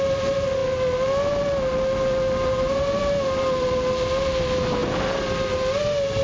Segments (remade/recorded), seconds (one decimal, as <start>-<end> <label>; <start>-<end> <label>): 0.0-6.2 recorded

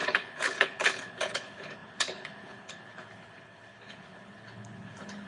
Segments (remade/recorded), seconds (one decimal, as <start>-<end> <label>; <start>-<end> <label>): 0.0-5.3 remade

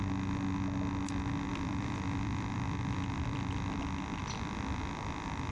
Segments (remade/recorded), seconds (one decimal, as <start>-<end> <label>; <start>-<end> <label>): 0.0-1.5 recorded; 1.5-3.8 remade; 3.8-4.2 recorded; 4.2-4.8 remade; 4.8-5.5 recorded

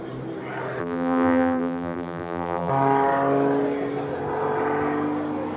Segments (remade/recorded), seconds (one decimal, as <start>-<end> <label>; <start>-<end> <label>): 0.0-0.8 recorded; 0.8-2.7 remade; 2.7-5.6 recorded

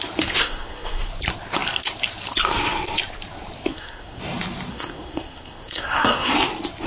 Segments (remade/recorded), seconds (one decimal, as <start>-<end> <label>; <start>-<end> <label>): 0.0-0.4 recorded; 0.4-1.1 remade; 1.1-3.7 recorded; 3.7-4.2 remade; 4.2-4.7 recorded; 4.7-6.3 remade; 6.3-6.9 recorded